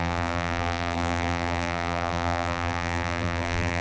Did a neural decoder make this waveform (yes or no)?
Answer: yes